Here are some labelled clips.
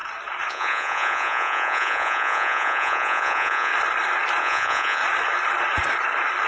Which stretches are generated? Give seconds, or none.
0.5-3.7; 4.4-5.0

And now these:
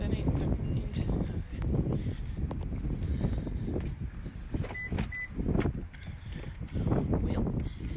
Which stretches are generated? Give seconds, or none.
none

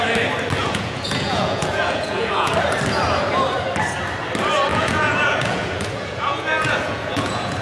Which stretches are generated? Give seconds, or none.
0.6-2.5; 4.7-7.6

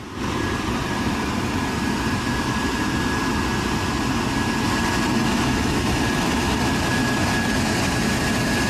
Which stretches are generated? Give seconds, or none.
none

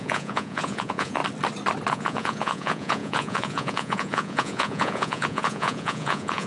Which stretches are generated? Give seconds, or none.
0.0-1.2; 1.9-6.5

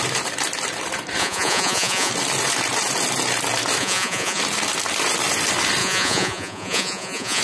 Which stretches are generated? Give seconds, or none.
1.2-2.1; 3.8-4.4; 5.8-7.4